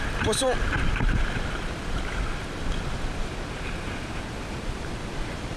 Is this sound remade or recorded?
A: remade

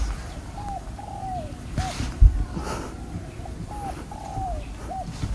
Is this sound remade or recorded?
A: remade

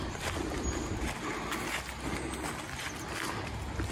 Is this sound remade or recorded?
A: recorded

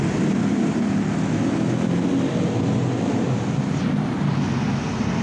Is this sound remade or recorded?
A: recorded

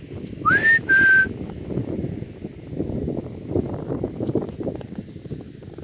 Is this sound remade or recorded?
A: recorded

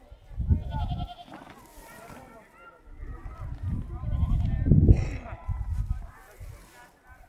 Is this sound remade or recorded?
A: recorded